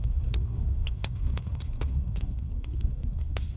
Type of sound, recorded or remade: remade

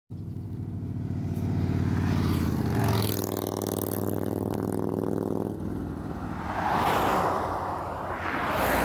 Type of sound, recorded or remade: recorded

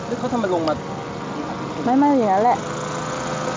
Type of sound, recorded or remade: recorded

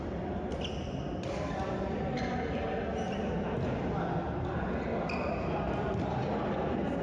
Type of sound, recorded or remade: recorded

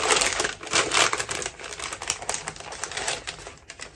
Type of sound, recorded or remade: recorded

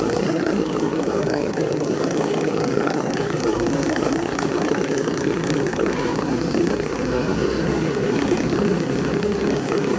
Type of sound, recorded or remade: remade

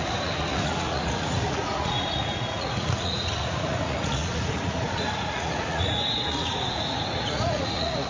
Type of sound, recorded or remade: remade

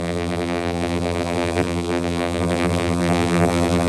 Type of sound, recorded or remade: remade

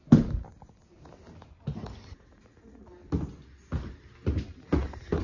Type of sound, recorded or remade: recorded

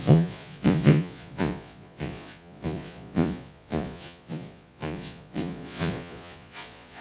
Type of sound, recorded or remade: remade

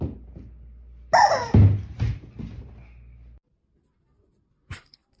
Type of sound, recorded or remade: recorded